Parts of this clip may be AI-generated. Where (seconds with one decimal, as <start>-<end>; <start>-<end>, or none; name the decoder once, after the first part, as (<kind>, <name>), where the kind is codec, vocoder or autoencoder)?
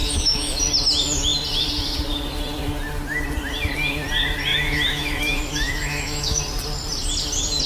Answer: 0.0-0.6 (autoencoder, DAC-VAE); 4.5-6.4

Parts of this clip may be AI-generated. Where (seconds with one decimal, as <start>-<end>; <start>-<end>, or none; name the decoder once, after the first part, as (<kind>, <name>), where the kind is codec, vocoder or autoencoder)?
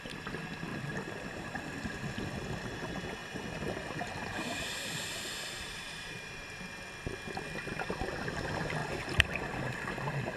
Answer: 0.7-1.6 (vocoder, BigVGAN v2); 3.2-6.6; 8.8-9.4